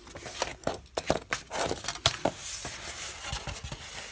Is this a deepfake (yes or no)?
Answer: no